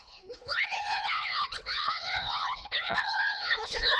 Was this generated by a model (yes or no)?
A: yes